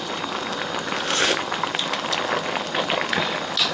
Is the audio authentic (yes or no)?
yes